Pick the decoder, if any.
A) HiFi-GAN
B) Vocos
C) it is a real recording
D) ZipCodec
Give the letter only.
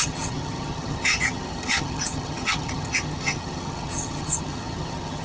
A